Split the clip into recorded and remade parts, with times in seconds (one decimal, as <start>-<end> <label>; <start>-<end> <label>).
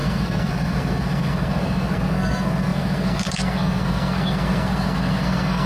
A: 0.0-5.7 remade